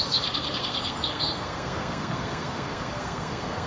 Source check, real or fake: fake